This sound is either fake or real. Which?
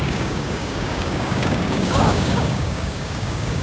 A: fake